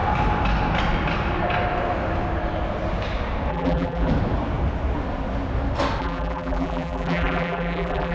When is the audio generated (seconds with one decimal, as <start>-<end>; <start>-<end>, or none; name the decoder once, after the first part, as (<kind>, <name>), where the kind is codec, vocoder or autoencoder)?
3.5-4.1 (vocoder, BigVGAN v2); 6.0-8.1